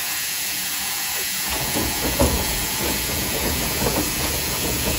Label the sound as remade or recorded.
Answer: remade